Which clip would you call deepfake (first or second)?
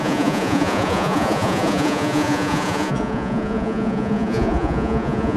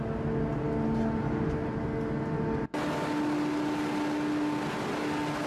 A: first